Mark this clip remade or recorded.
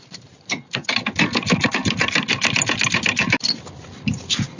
recorded